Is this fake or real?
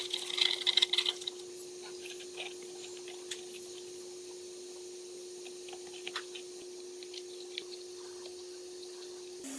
real